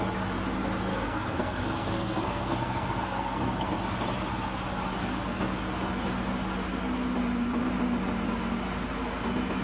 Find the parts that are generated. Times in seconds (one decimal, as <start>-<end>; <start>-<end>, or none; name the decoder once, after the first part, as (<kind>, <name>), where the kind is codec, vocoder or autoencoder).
0.9-3.7 (codec, SNAC); 5.0-5.6